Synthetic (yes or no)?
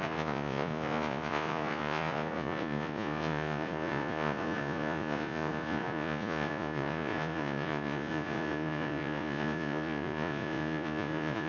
yes